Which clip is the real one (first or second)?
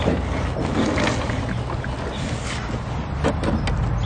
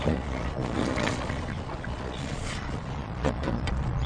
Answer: first